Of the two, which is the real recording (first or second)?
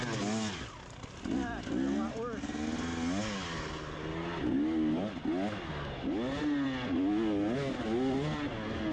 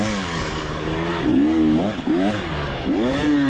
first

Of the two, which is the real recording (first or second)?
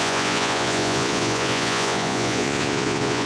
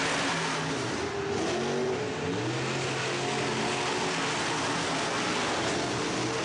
second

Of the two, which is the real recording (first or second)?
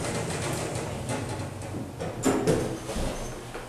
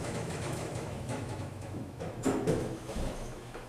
first